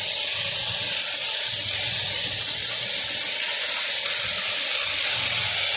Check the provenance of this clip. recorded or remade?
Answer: recorded